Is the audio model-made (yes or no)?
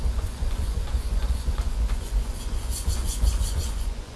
yes